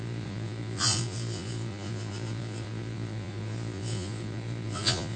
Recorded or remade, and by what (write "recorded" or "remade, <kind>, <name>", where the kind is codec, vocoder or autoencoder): remade, vocoder, Vocos